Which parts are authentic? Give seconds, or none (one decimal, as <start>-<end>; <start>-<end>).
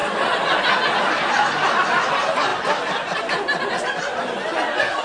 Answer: 0.0-5.0